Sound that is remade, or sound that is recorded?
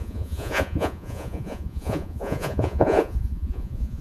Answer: remade